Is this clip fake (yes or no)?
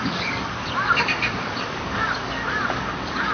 yes